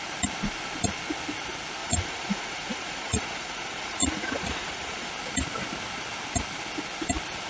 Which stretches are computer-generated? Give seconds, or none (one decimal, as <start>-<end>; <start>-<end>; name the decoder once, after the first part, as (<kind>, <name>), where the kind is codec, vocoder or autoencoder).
1.8-5.1 (vocoder, Vocos)